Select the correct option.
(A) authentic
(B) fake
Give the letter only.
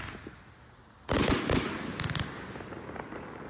A